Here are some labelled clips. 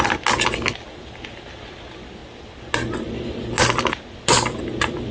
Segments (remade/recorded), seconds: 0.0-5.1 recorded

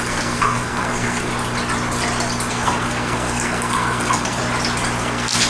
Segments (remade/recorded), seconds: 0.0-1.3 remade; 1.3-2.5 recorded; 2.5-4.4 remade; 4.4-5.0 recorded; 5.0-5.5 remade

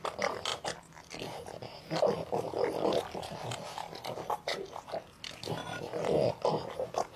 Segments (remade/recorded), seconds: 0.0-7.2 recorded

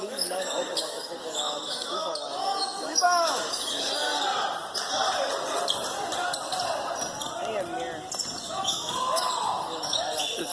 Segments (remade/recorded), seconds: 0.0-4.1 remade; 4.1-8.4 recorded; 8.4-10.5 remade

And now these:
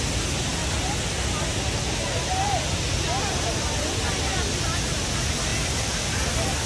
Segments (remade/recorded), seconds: 0.0-6.7 recorded

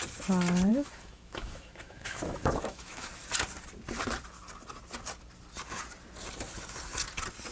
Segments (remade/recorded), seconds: 0.0-0.7 recorded; 0.7-3.1 remade; 3.1-7.5 recorded

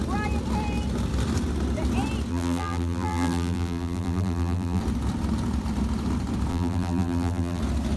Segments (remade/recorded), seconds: 0.0-2.3 recorded; 2.3-4.8 remade; 4.8-6.5 recorded; 6.5-7.6 remade; 7.6-8.0 recorded

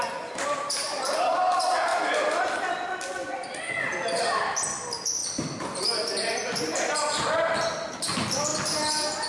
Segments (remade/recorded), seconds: 0.0-1.9 remade; 1.9-3.0 recorded; 3.0-8.5 remade; 8.5-9.3 recorded